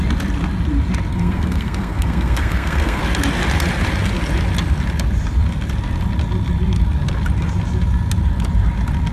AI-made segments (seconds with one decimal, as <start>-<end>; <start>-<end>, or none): 1.1-3.0